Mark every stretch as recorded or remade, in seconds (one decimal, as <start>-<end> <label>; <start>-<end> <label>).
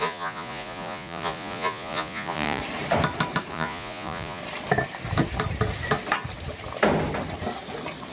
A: 0.0-2.6 remade; 2.6-3.5 recorded; 3.5-4.4 remade; 4.4-8.1 recorded